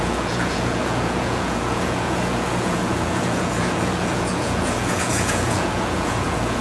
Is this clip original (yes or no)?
no